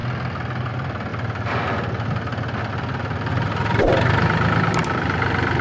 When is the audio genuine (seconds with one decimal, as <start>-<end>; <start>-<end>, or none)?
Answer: 0.0-5.6